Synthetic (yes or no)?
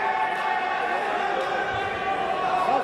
no